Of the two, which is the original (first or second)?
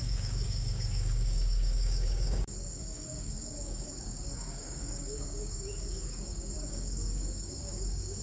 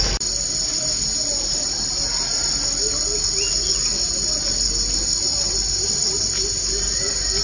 second